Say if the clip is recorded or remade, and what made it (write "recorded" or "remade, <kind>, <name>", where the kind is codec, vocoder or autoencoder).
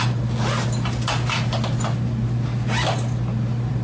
recorded